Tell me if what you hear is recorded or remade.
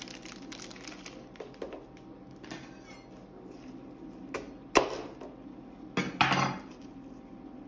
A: recorded